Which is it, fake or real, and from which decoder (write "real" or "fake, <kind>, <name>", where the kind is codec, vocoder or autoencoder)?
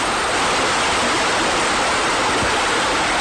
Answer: real